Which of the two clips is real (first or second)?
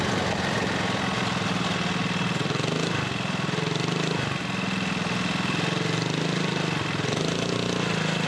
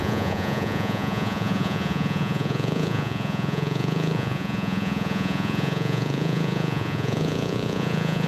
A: first